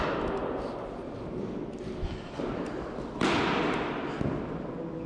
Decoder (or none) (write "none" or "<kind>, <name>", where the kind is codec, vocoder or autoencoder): none